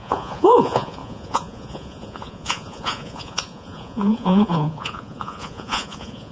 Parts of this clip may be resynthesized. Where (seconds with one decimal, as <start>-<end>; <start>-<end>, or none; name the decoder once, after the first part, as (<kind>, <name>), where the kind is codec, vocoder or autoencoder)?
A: 0.0-6.3 (vocoder, Vocos)